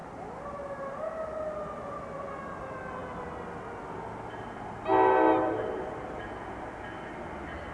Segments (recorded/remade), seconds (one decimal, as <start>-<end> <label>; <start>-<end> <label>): 0.0-7.7 recorded